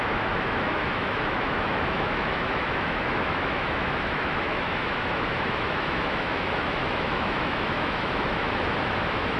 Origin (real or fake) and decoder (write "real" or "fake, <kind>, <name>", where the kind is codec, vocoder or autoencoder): fake, autoencoder, DAC-VAE